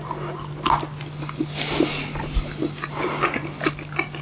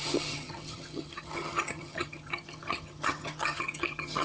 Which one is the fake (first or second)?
second